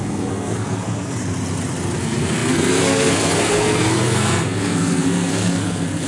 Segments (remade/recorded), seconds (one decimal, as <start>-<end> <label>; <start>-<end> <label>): 0.0-1.2 remade; 1.2-2.0 recorded; 2.0-6.1 remade